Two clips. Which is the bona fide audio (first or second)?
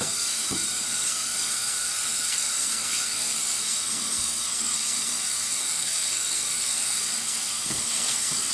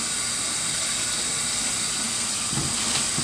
second